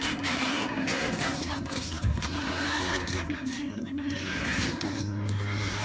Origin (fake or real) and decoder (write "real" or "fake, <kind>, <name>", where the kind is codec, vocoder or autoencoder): fake, codec, SNAC